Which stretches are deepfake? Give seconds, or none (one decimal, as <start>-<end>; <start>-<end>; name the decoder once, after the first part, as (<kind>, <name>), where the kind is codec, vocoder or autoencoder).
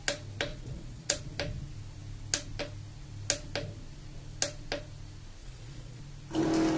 0.5-1.2 (vocoder, Vocos); 5.4-6.0